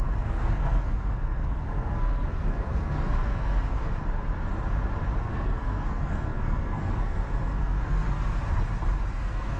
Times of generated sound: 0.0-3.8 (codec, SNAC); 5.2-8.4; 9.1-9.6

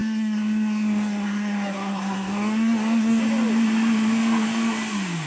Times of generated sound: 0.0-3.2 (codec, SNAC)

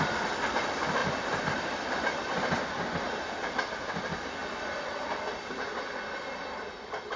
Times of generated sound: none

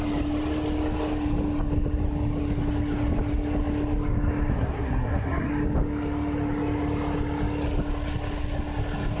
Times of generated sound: 4.5-5.5 (codec, SNAC)

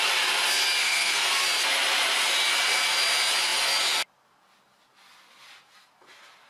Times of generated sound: 0.8-1.3 (codec, SNAC)

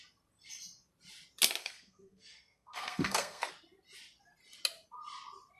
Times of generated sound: 1.6-3.5 (codec, SNAC)

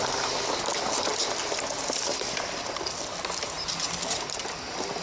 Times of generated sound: none